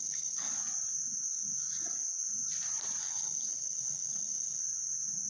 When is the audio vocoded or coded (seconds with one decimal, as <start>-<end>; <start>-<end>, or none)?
0.0-0.5; 3.0-4.6